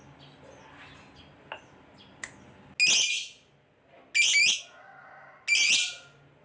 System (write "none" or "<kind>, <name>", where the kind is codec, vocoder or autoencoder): none